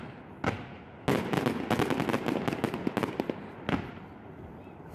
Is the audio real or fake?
real